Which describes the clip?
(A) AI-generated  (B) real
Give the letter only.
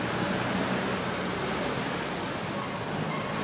B